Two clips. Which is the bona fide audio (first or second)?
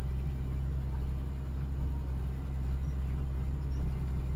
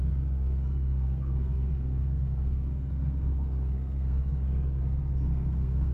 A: first